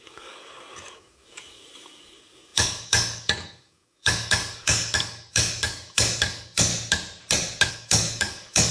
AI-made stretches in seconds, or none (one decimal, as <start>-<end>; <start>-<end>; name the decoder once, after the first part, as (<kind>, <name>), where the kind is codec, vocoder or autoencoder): 0.0-6.7 (codec, DAC); 7.7-8.7